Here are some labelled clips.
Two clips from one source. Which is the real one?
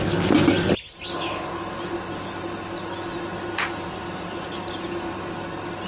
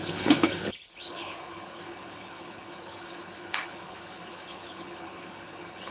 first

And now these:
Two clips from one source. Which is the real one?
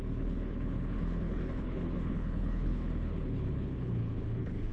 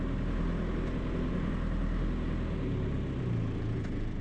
second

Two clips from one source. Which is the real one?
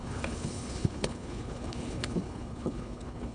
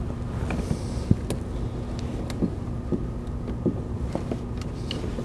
second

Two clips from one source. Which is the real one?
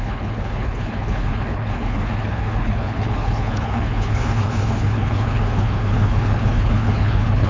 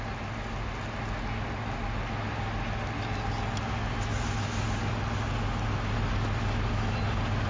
second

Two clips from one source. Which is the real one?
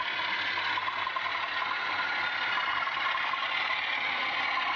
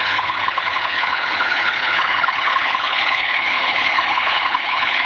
first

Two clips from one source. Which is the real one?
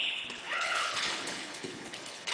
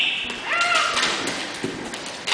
second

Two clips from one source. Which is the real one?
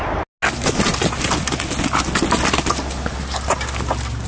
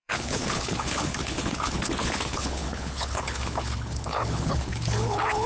first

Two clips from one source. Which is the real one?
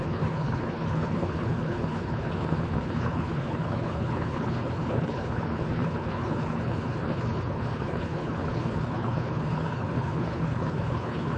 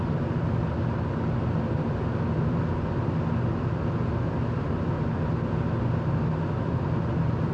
second